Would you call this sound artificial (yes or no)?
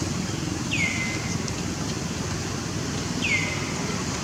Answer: no